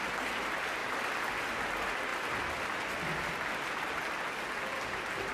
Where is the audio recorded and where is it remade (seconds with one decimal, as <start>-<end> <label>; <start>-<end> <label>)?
0.0-0.8 recorded; 0.8-1.4 remade; 1.4-5.3 recorded